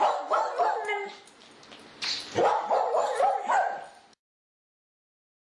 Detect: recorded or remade recorded